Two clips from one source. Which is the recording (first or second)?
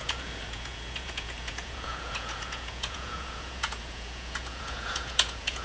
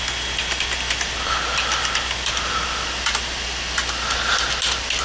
second